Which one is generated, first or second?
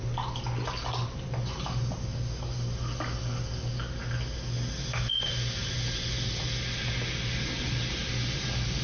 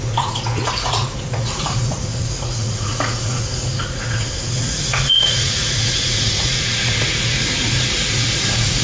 second